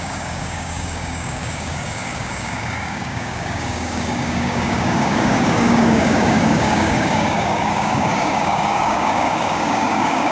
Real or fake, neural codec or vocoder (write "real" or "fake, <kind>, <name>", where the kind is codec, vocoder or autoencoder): fake, codec, DAC